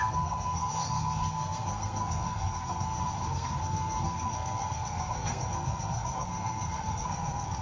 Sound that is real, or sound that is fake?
fake